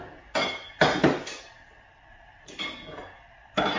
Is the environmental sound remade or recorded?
recorded